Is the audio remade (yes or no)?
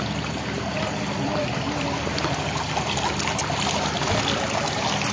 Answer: no